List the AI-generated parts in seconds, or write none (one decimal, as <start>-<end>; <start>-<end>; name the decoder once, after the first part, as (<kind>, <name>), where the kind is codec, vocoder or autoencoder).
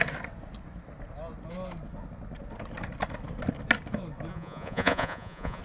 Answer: 4.3-5.6 (vocoder, Vocos)